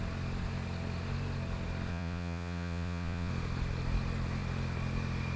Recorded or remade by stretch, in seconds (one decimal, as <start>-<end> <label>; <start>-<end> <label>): 0.0-1.9 recorded; 1.9-3.3 remade; 3.3-5.4 recorded